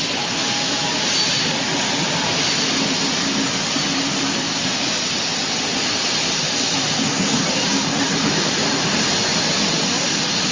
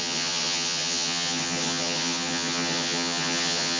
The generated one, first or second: second